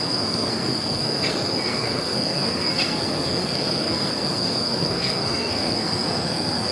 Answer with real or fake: fake